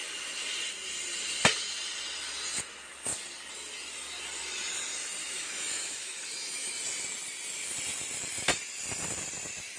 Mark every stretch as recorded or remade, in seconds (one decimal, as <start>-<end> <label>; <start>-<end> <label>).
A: 0.0-5.2 recorded; 5.2-6.7 remade; 6.7-9.8 recorded